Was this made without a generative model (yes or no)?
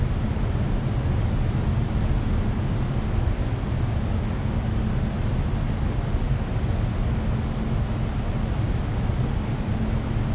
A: yes